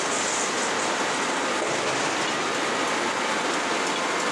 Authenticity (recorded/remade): recorded